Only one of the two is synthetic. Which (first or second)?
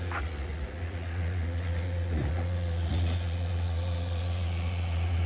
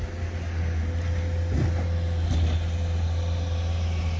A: first